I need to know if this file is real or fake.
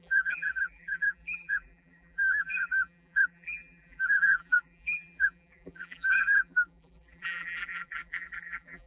fake